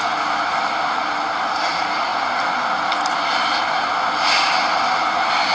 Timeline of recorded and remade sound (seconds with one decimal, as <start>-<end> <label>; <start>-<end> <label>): 0.0-5.5 recorded